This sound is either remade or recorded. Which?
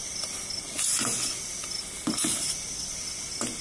recorded